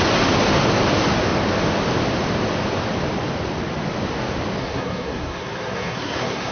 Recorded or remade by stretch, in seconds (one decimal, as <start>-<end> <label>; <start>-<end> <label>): 0.0-4.6 recorded; 4.6-6.5 remade